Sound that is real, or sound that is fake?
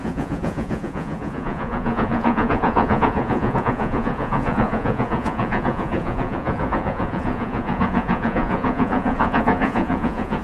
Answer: fake